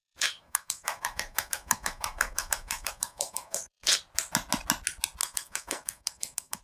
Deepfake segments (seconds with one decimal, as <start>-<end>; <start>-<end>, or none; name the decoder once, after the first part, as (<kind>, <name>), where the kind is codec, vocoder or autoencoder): 0.0-4.0 (codec, SNAC); 5.2-6.6